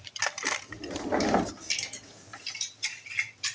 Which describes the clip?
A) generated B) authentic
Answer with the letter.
B